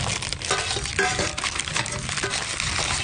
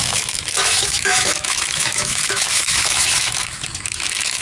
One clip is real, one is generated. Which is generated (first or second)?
second